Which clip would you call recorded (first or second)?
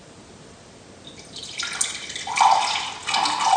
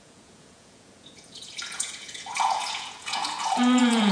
first